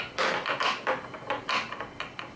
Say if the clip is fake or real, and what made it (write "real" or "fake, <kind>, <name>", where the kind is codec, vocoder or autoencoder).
real